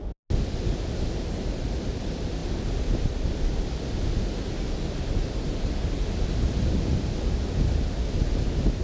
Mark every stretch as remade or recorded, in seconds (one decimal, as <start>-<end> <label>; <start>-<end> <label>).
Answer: 0.0-8.8 recorded